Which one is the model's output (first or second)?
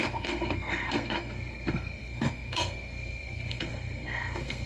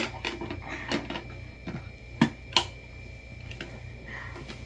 first